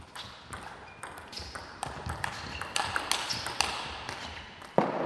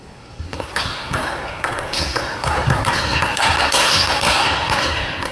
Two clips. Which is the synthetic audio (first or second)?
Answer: second